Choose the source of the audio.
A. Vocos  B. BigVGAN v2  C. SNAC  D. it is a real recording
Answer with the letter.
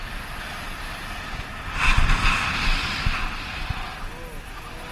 D